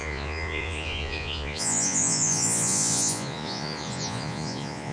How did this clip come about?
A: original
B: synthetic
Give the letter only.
B